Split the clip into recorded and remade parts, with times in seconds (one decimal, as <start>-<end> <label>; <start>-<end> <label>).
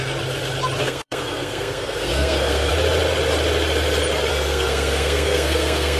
0.0-0.8 recorded; 0.8-2.7 remade; 2.7-4.3 recorded; 4.3-6.0 remade